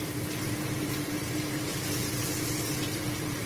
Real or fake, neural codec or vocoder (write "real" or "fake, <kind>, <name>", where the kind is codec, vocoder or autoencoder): fake, vocoder, BigVGAN v2